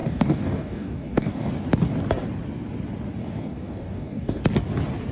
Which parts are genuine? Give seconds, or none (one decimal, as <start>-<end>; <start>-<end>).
1.5-3.2; 4.4-5.1